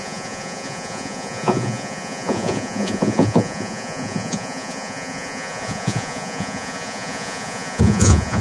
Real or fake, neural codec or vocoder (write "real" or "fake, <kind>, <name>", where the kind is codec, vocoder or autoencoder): fake, vocoder, Vocos